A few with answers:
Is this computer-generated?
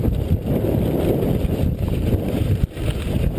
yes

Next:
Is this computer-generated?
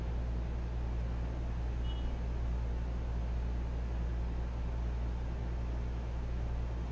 no